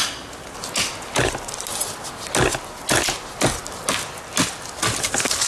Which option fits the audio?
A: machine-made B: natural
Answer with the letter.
B